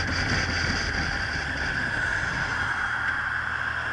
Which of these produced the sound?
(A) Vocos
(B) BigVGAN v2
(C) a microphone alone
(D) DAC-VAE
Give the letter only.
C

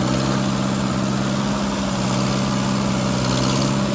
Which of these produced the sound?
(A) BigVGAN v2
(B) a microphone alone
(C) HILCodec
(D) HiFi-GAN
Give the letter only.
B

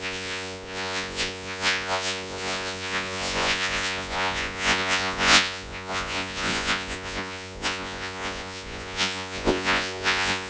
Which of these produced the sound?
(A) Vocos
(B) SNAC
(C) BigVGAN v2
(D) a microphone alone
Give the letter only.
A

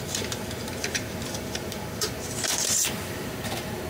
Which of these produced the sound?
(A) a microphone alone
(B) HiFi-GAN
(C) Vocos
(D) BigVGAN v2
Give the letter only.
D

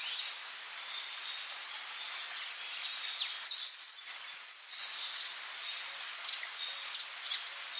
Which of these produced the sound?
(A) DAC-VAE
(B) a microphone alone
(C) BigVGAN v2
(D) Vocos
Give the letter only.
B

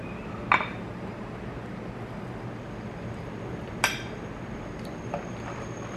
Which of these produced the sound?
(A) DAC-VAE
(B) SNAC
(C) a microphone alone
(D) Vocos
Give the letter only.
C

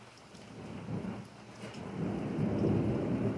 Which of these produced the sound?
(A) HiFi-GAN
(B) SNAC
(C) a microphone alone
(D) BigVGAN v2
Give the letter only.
C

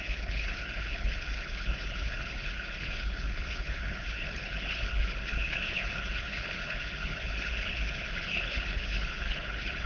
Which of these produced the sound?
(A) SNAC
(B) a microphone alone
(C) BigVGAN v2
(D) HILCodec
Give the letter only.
D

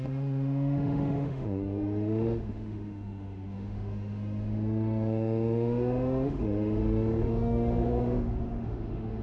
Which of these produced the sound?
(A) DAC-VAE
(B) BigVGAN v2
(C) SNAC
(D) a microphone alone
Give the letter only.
A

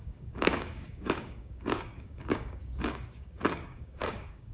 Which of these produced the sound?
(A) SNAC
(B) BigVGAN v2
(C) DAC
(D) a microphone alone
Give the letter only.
C